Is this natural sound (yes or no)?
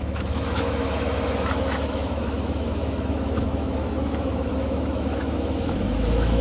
no